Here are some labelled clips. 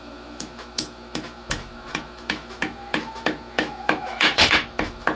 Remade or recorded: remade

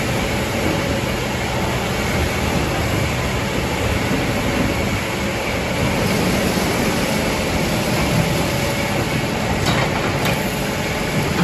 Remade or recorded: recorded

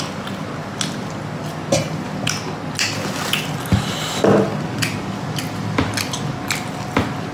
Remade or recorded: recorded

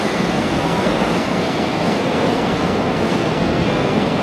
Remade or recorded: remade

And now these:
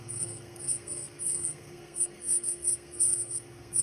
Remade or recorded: remade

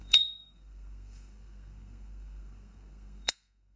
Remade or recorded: remade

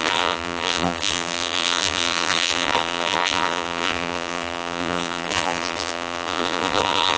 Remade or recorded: remade